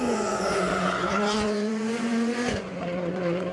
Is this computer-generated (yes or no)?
yes